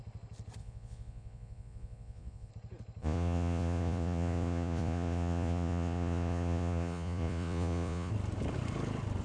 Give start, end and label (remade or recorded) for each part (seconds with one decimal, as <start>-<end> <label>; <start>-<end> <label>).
0.0-0.6 recorded; 0.6-2.5 remade; 2.5-3.0 recorded; 3.0-8.1 remade; 8.1-9.2 recorded